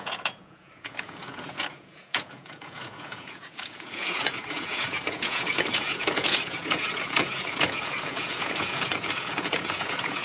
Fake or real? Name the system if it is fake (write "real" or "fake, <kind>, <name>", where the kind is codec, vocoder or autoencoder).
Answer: fake, vocoder, Vocos